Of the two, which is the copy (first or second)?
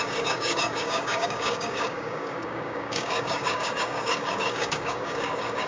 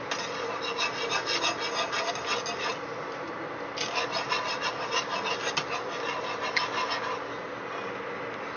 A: first